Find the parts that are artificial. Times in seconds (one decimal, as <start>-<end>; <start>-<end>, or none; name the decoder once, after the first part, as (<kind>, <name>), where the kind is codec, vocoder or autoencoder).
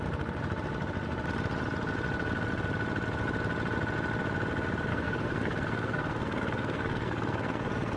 4.9-8.0 (codec, SNAC)